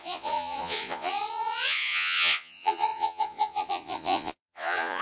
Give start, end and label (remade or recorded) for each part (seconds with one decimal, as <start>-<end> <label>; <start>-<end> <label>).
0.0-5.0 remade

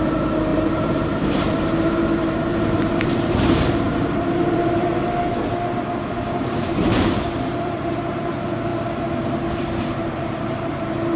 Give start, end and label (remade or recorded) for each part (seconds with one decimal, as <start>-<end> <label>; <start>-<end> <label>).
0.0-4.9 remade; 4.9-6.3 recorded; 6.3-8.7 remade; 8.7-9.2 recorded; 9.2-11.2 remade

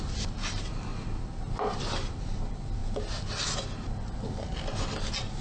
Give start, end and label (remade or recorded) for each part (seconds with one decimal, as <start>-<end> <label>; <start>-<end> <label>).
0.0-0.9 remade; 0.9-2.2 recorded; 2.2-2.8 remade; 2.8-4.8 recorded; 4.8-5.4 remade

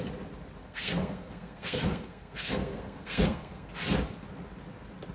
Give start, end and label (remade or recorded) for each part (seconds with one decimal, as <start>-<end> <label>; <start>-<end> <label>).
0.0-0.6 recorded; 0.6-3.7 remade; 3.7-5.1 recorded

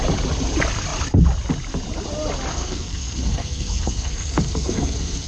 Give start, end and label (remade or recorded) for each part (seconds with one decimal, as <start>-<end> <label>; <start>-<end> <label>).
0.0-2.5 recorded; 2.5-5.3 remade

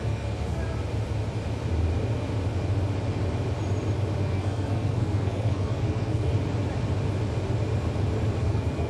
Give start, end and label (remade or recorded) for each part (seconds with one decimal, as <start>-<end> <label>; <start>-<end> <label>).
0.0-0.6 remade; 0.6-4.2 recorded; 4.2-6.3 remade; 6.3-8.4 recorded; 8.4-8.9 remade